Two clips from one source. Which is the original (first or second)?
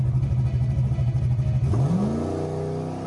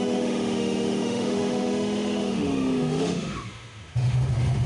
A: first